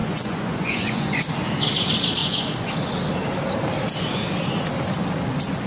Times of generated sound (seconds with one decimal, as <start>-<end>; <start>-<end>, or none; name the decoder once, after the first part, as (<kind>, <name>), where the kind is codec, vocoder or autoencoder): 0.0-1.2 (vocoder, Vocos); 2.2-2.7